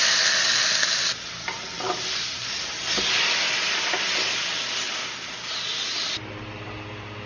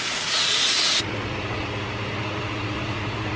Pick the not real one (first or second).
second